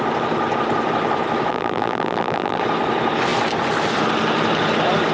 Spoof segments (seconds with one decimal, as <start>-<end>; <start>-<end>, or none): 1.5-2.6